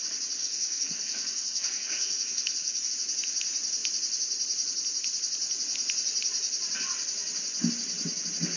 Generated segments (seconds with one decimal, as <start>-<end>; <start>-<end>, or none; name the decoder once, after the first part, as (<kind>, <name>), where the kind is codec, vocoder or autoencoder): 0.4-2.9 (codec, SNAC)